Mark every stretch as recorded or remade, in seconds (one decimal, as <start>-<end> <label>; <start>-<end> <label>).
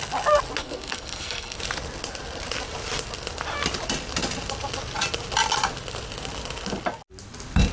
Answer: 0.0-0.6 recorded; 0.6-1.6 remade; 1.6-7.7 recorded